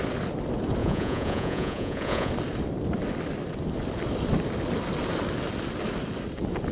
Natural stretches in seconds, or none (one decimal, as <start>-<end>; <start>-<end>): 0.0-0.8; 2.3-6.7